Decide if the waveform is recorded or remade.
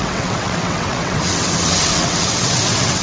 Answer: remade